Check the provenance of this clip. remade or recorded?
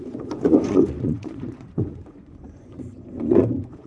remade